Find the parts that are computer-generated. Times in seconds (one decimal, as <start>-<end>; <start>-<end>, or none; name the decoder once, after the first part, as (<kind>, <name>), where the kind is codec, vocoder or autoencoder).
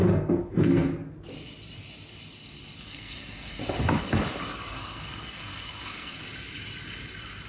0.0-0.9 (codec, SNAC); 2.8-3.6; 4.7-6.2